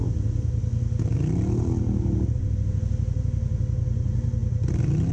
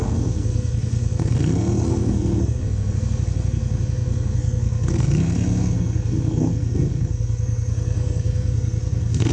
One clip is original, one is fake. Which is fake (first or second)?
second